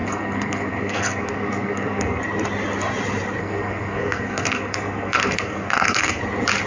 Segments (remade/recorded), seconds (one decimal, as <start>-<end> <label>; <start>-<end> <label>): 0.0-2.2 remade; 2.2-3.4 recorded; 3.4-6.2 remade; 6.2-6.7 recorded